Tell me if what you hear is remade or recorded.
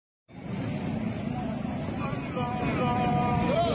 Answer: recorded